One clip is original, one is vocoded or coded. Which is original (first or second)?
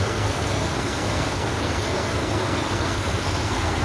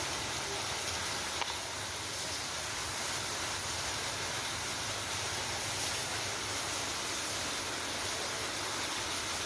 second